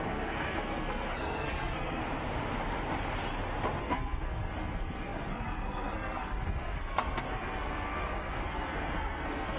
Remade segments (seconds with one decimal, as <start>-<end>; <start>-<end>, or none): 0.0-2.0; 3.8-9.6